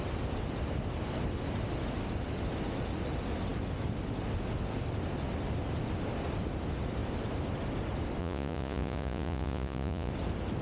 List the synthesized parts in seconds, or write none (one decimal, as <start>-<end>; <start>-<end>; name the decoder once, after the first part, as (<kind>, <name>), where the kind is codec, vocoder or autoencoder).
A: 8.2-10.1 (vocoder, Vocos)